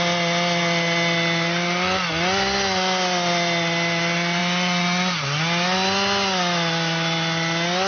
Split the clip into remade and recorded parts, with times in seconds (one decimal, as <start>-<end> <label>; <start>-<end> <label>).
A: 0.0-7.9 recorded